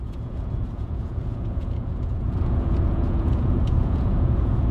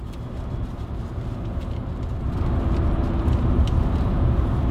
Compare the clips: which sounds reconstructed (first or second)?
first